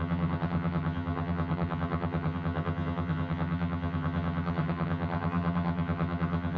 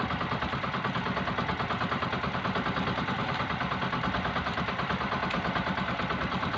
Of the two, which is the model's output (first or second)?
first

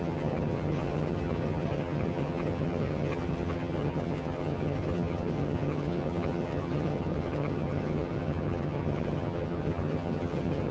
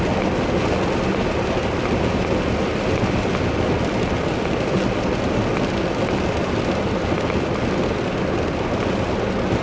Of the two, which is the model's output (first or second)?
first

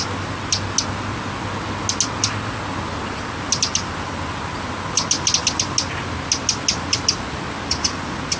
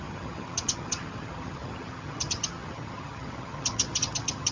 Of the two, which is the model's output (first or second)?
second